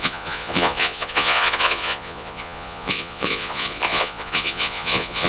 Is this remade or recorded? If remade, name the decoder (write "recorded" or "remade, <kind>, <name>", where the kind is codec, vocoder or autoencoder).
remade, vocoder, Vocos